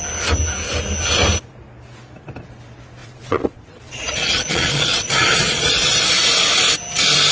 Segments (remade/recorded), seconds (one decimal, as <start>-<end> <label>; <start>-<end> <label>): 0.0-3.0 recorded; 3.0-6.1 remade; 6.1-7.3 recorded

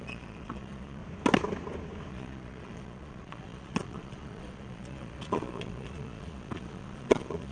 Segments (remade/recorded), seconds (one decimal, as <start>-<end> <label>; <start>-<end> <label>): 0.0-1.0 remade; 1.0-2.1 recorded; 2.1-7.5 remade

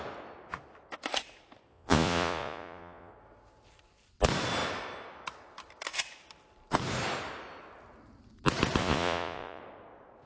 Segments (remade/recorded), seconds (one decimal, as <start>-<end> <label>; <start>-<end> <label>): 0.0-1.7 recorded; 1.7-3.1 remade; 3.1-8.8 recorded; 8.8-9.6 remade; 9.6-10.3 recorded

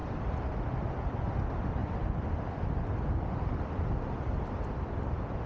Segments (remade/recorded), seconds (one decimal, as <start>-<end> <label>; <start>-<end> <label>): 0.0-5.5 recorded

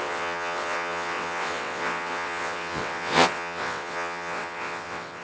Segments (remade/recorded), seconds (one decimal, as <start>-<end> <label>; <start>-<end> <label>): 0.0-5.2 remade

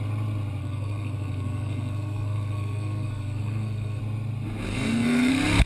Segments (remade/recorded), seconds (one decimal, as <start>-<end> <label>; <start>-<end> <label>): 0.0-0.6 recorded; 0.6-4.0 remade; 4.0-4.7 recorded; 4.7-5.3 remade; 5.3-5.7 recorded